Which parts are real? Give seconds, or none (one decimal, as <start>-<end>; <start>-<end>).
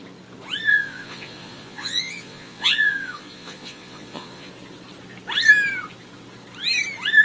0.0-0.7; 4.5-7.2